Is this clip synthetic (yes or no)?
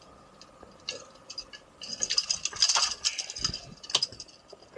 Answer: no